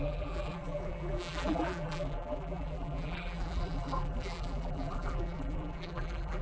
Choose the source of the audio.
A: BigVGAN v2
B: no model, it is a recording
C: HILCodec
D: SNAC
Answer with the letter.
A